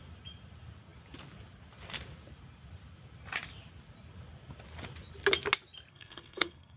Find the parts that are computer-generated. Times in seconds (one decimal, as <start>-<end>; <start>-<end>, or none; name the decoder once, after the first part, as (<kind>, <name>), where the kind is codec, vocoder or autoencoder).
5.9-6.8 (codec, SNAC)